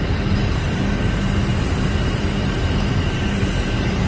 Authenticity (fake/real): fake